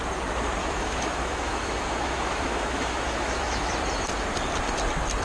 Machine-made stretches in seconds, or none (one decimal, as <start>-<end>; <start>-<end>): 0.6-3.7